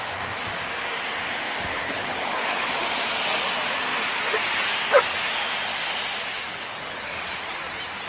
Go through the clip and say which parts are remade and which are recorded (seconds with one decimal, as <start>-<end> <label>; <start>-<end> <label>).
0.0-1.7 recorded; 1.7-2.7 remade; 2.7-6.5 recorded; 6.5-7.2 remade; 7.2-8.1 recorded